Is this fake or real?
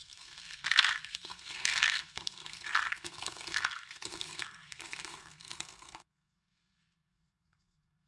fake